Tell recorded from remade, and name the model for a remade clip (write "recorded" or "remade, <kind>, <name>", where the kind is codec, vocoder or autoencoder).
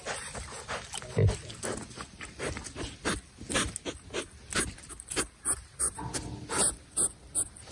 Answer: recorded